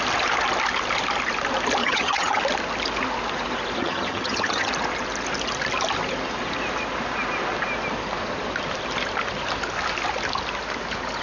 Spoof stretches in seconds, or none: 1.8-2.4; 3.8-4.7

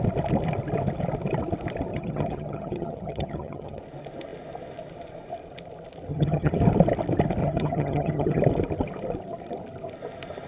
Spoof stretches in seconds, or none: 1.9-3.8; 6.1-6.6; 7.4-8.4

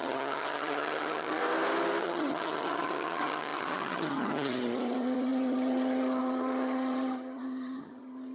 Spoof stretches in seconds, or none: 0.0-1.4; 2.0-8.3